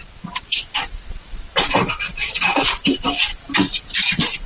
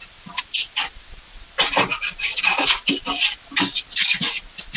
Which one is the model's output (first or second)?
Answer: first